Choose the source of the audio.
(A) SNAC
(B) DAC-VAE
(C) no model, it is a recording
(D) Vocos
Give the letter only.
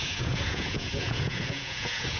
D